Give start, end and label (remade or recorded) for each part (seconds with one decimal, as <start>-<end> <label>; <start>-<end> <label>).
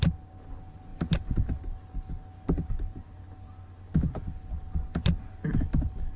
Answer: 0.0-6.2 recorded